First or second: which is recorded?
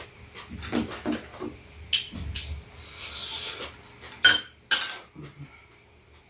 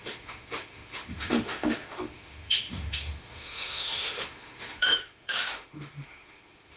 first